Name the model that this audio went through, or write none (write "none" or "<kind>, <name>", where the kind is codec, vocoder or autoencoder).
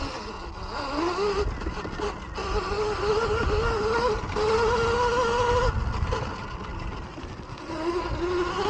none